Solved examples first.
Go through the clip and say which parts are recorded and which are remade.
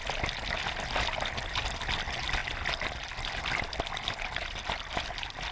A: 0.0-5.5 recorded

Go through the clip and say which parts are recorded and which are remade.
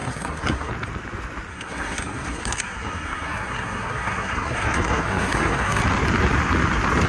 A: 0.0-0.7 remade; 0.7-1.5 recorded; 1.5-5.8 remade; 5.8-7.1 recorded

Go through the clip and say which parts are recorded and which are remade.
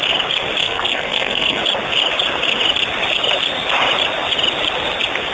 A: 0.0-0.6 recorded; 0.6-1.6 remade; 1.6-5.3 recorded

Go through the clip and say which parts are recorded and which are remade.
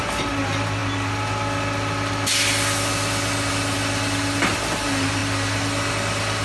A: 0.0-6.4 recorded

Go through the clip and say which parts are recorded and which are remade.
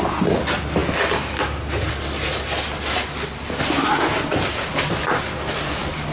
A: 0.0-6.1 recorded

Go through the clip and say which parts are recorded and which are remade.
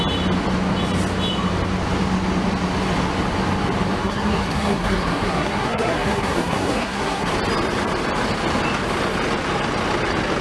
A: 0.0-4.0 recorded; 4.0-7.3 remade; 7.3-10.4 recorded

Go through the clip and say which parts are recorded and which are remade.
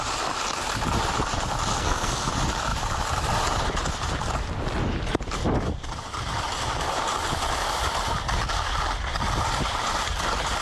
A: 0.0-1.7 recorded; 1.7-2.3 remade; 2.3-10.6 recorded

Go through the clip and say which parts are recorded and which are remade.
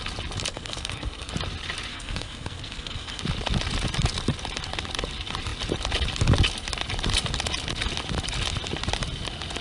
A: 0.0-0.5 recorded; 0.5-1.3 remade; 1.3-1.9 recorded; 1.9-3.2 remade; 3.2-9.6 recorded